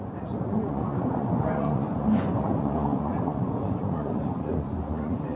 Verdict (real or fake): fake